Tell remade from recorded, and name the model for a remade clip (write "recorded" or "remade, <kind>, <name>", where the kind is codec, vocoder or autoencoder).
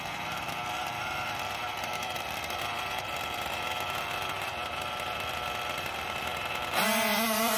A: remade, vocoder, BigVGAN v2